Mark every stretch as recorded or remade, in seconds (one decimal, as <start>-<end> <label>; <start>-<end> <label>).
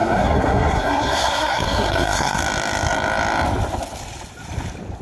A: 0.0-2.4 remade; 2.4-5.0 recorded